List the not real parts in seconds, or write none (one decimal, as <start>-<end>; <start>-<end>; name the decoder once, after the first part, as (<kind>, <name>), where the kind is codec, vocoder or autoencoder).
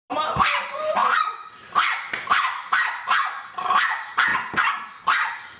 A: none